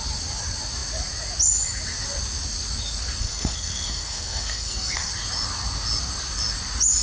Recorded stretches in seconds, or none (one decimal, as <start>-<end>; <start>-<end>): 0.0-3.2; 5.1-7.0